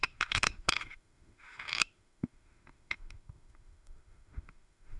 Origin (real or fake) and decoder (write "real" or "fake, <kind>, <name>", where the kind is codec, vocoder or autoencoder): fake, autoencoder, DAC-VAE